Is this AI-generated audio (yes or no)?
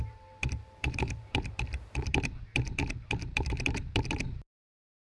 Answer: yes